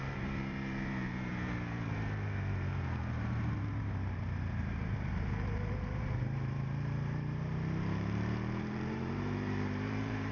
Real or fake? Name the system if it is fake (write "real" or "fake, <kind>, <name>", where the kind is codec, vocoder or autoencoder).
fake, vocoder, BigVGAN v2